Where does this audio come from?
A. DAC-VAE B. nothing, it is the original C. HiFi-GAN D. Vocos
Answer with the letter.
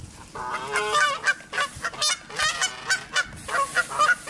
B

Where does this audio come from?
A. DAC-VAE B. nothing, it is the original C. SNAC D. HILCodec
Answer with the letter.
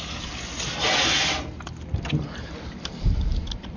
B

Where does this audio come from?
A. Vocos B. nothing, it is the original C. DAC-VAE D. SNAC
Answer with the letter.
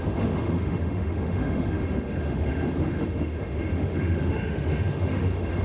C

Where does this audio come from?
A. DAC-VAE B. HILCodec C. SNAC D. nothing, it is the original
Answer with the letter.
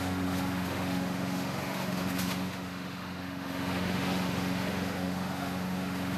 A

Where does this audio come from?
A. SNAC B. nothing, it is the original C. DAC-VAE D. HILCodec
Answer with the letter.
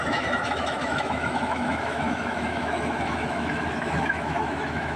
C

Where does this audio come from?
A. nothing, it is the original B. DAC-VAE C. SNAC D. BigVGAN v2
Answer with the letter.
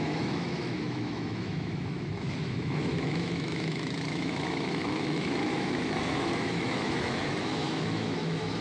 B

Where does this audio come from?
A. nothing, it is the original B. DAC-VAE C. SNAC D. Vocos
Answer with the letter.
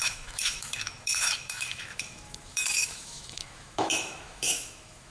B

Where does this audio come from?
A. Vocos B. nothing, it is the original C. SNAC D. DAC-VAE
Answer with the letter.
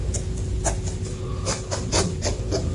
B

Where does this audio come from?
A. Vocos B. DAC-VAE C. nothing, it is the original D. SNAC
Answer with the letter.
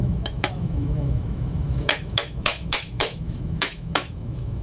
B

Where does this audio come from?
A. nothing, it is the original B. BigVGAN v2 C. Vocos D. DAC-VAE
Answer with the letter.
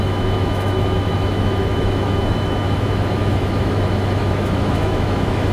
D